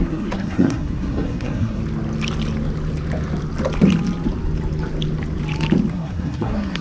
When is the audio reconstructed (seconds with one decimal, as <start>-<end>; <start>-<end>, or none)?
0.0-1.8; 5.9-6.8